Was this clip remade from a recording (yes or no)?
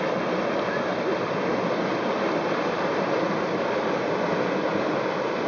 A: no